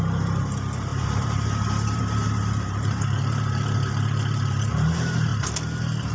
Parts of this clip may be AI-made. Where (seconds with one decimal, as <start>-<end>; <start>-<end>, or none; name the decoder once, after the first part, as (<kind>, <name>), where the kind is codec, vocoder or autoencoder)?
0.0-5.3 (vocoder, BigVGAN v2)